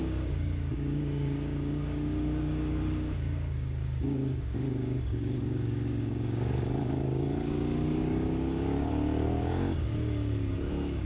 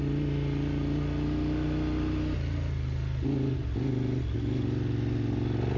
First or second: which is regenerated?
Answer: first